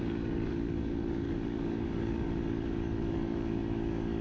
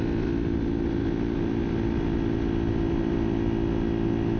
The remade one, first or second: first